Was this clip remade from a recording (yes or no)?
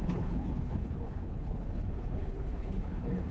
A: yes